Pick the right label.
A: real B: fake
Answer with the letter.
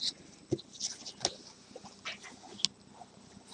A